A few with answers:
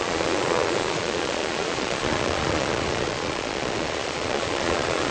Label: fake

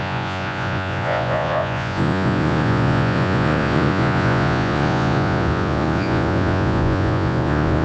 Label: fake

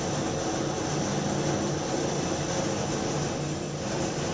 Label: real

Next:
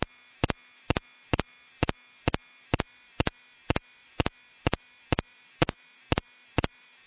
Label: real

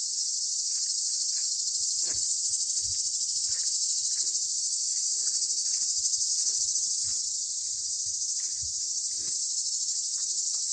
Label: fake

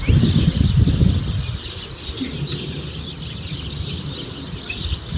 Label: real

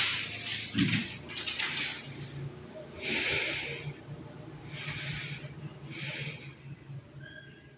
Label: real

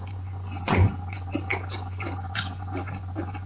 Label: fake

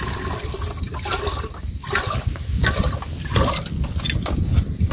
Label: real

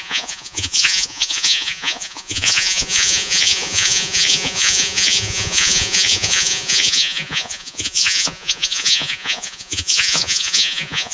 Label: fake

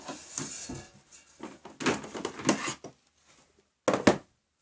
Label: real